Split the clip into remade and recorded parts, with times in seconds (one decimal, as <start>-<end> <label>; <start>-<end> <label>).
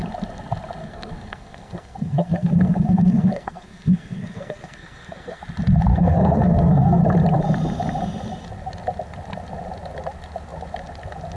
0.0-0.8 recorded; 0.8-5.4 remade; 5.4-5.9 recorded; 5.9-7.0 remade; 7.0-11.4 recorded